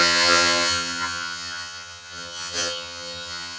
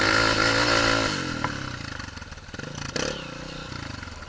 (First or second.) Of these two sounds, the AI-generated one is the first